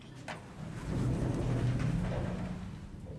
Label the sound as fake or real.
real